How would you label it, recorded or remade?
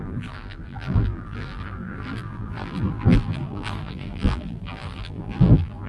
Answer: remade